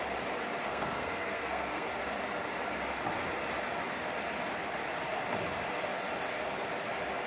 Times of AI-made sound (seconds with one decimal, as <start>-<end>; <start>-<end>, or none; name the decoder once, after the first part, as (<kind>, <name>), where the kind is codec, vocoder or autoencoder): 0.6-1.9 (codec, SNAC)